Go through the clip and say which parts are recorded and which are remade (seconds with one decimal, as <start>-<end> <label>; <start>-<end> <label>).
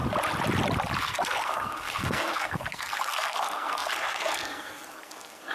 0.0-1.0 recorded; 1.0-5.5 remade